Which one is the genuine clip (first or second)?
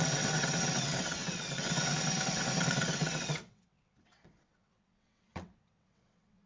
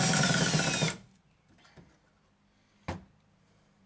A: second